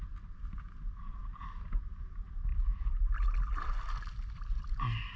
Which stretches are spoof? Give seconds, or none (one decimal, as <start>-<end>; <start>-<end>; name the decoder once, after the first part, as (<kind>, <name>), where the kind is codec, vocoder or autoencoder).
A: none